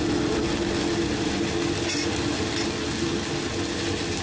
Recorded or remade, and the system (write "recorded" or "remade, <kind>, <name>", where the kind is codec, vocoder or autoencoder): recorded